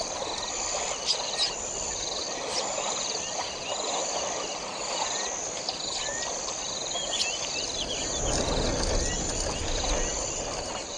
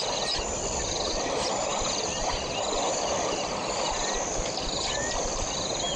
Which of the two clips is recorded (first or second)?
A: first